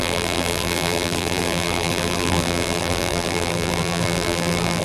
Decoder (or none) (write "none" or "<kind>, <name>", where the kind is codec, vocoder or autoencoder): vocoder, BigVGAN v2